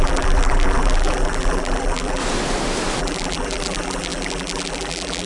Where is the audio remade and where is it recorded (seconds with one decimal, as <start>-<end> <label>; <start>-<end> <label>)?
0.0-2.2 remade; 2.2-3.0 recorded; 3.0-5.3 remade